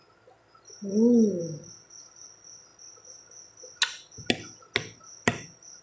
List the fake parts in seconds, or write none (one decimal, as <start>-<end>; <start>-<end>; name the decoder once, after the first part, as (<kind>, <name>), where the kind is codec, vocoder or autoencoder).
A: none

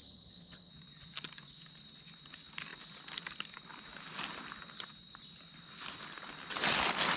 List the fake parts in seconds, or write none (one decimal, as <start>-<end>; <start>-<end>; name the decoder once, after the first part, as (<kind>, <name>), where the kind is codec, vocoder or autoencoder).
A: 0.0-0.7 (vocoder, HiFi-GAN)

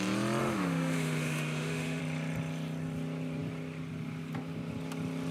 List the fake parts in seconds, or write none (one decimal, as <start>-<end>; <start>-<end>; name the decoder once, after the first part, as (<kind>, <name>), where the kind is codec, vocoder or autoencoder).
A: 0.4-2.0 (autoencoder, DAC-VAE)